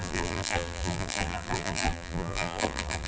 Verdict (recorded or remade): remade